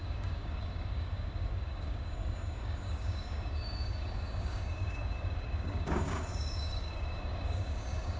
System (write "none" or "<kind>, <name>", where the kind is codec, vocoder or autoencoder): codec, DAC